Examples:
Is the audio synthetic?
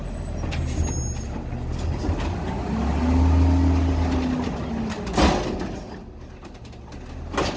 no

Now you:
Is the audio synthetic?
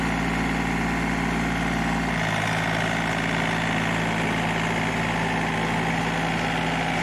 no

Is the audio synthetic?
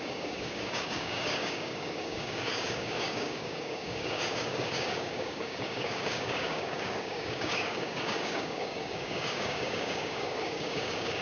yes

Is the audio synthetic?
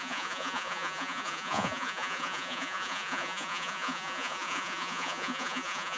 yes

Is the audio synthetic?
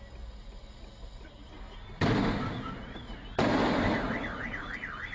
no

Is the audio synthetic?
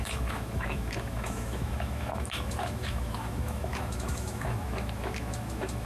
yes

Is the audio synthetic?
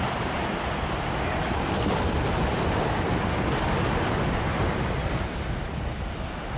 no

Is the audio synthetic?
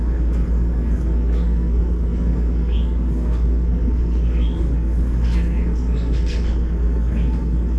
yes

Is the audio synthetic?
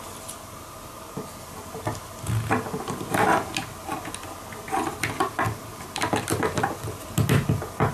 no